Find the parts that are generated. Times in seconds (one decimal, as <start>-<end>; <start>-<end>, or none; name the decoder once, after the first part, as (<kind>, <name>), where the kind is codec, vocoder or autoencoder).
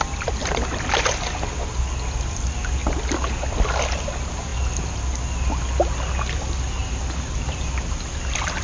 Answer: none